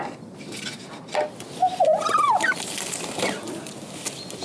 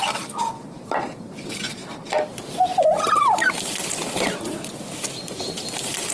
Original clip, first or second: first